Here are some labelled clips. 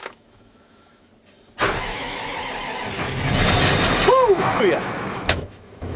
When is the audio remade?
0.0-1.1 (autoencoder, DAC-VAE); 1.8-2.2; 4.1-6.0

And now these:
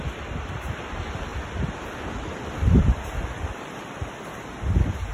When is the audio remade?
1.3-4.4 (vocoder, BigVGAN v2)

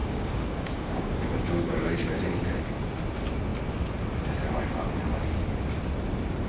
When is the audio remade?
0.0-2.6 (codec, DAC)

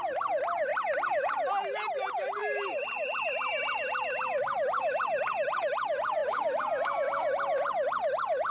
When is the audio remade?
none